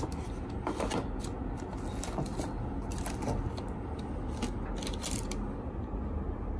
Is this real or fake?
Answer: real